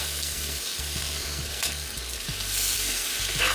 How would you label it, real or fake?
fake